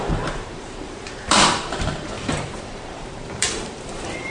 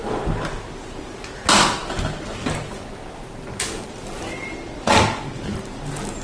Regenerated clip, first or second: first